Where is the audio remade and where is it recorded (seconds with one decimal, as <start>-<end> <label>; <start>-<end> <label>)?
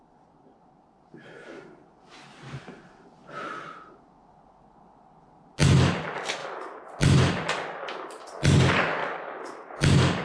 0.0-9.0 recorded; 9.0-9.7 remade; 9.7-10.2 recorded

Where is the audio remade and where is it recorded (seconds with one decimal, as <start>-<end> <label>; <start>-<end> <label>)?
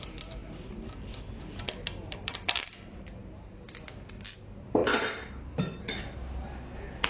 0.0-7.1 recorded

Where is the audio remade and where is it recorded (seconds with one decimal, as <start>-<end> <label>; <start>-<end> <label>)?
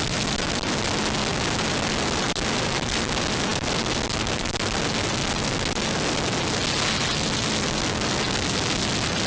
0.0-9.3 recorded